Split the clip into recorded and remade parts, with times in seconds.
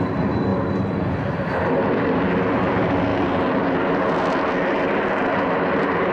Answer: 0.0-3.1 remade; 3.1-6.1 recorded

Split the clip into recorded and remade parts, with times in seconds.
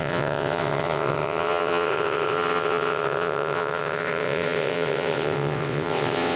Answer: 0.0-6.4 remade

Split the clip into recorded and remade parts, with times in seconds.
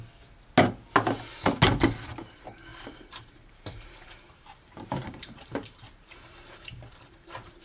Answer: 0.0-2.7 recorded; 2.7-7.6 remade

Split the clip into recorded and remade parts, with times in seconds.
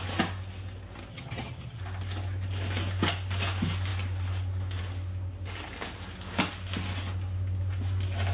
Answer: 0.0-1.1 recorded; 1.1-1.8 remade; 1.8-8.3 recorded